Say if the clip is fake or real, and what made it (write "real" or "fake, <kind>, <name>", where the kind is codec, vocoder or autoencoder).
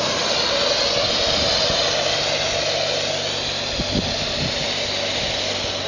real